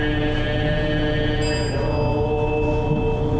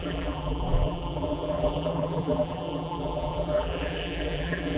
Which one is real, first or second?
first